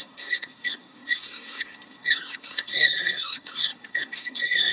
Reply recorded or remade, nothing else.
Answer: remade